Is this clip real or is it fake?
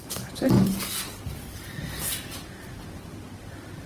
real